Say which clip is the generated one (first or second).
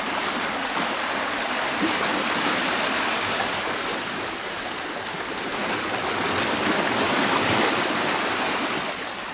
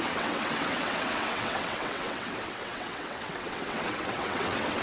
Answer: second